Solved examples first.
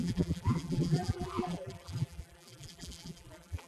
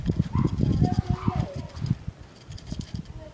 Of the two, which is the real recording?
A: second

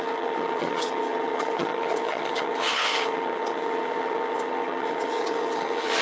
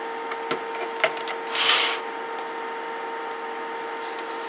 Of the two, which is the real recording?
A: second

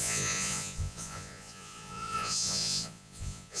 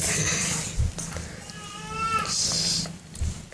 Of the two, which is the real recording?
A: second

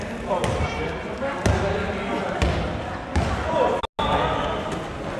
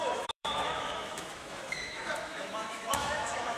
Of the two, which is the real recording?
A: first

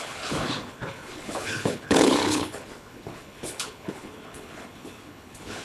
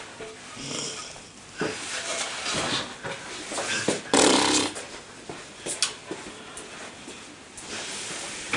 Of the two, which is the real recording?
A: second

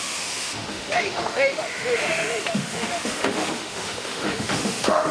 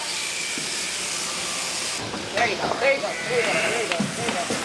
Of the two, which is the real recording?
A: second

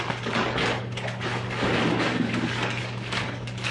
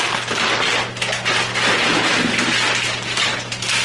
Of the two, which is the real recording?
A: second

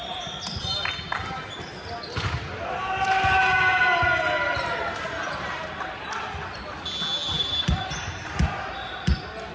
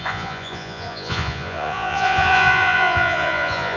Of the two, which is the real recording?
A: first